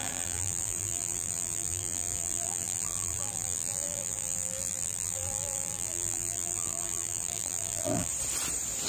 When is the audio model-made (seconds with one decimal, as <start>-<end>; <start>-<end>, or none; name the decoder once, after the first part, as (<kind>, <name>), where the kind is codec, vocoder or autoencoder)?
0.0-8.1 (vocoder, BigVGAN v2)